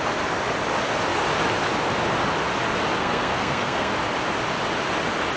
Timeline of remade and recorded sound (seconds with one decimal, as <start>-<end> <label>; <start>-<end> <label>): 0.0-3.0 recorded; 3.0-3.9 remade; 3.9-5.4 recorded